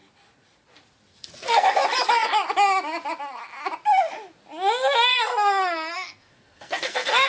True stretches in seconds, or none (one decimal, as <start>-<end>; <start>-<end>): 0.0-1.1; 1.7-5.1